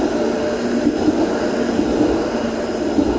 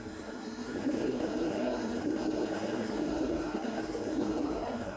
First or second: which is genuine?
first